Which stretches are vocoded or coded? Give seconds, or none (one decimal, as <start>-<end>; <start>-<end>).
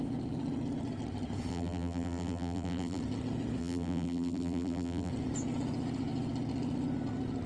1.5-3.0; 3.6-5.1